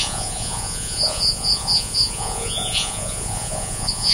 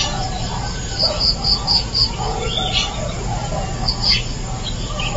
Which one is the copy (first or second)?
first